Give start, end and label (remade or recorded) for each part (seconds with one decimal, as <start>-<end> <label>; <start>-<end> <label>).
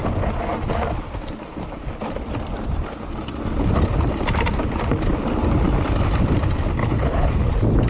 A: 0.0-6.8 recorded; 6.8-7.5 remade; 7.5-7.9 recorded